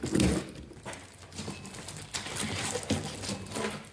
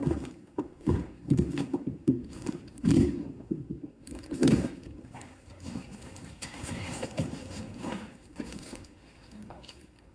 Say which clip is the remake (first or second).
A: second